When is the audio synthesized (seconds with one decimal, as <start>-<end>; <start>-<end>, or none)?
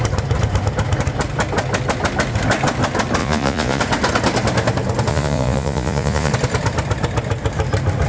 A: 3.2-3.8; 5.1-6.3